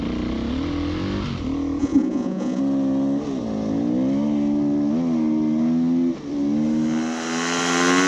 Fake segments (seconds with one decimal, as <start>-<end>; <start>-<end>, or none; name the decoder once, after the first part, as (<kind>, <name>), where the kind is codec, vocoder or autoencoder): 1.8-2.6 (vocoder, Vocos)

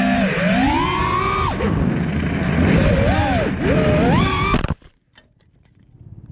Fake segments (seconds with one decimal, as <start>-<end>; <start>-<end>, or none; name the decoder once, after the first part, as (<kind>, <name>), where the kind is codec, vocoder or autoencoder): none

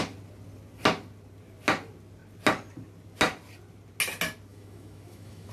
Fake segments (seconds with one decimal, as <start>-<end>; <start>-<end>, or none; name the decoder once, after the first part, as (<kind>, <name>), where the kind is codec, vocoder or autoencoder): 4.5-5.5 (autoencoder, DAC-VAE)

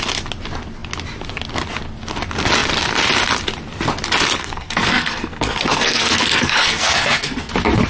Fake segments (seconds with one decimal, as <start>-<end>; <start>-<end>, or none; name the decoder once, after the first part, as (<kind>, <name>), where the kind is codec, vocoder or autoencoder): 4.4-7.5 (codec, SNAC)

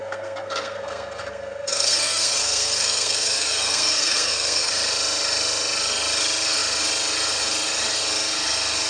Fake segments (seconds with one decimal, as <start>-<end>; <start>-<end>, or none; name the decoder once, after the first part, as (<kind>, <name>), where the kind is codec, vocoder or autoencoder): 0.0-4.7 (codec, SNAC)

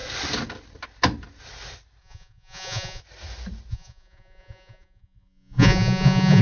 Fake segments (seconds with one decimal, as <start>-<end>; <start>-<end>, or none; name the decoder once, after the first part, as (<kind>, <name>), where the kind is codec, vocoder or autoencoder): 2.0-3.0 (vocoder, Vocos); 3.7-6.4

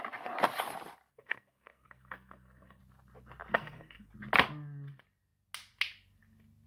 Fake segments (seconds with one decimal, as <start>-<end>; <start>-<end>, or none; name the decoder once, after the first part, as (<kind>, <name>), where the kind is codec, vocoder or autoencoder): 1.1-2.8 (codec, SNAC); 3.5-4.1